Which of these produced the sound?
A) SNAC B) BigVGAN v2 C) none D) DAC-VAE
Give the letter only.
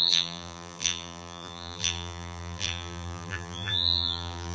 B